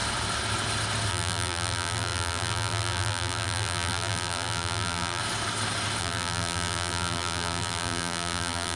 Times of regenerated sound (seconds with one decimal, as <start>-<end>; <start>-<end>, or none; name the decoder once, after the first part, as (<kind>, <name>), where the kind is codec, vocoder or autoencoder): 1.1-5.2 (vocoder, BigVGAN v2); 6.0-8.8